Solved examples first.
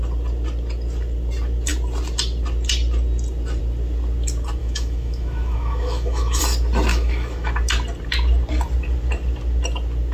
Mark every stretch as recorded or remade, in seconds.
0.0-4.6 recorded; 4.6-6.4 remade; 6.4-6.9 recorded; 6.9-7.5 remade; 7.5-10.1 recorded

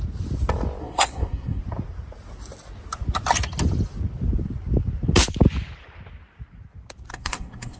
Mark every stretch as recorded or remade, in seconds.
0.0-0.8 recorded; 0.8-1.6 remade; 1.6-7.1 recorded; 7.1-7.8 remade

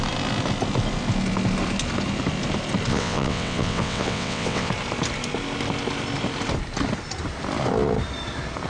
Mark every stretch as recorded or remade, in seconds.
0.0-2.9 recorded; 2.9-4.7 remade; 4.7-8.7 recorded